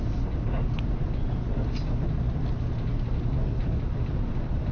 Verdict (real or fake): real